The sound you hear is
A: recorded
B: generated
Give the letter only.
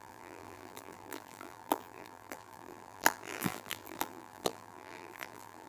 B